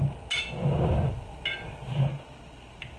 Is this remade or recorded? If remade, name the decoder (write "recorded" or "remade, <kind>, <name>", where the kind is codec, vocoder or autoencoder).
recorded